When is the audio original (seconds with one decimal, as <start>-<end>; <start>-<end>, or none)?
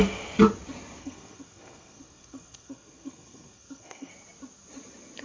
0.0-1.0; 4.1-5.2